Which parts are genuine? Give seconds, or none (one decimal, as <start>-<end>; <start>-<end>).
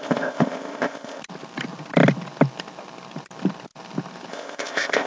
1.2-4.3